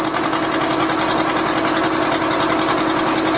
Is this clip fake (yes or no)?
no